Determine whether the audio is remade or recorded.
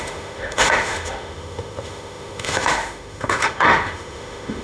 remade